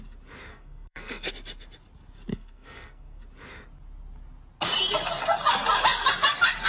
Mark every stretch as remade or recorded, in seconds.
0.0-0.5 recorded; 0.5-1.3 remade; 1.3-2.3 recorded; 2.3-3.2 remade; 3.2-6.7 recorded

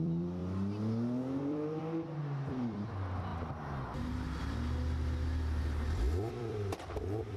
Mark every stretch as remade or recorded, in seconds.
0.0-0.4 remade; 0.4-1.4 recorded; 1.4-1.8 remade; 1.8-2.5 recorded; 2.5-3.3 remade; 3.3-6.3 recorded; 6.3-7.4 remade